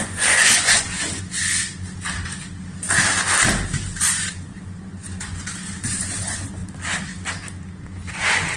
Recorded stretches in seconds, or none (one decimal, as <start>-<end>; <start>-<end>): 1.7-4.0; 6.6-8.1